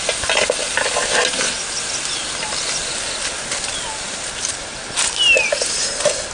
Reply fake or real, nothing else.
real